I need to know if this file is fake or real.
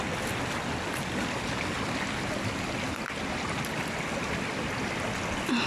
real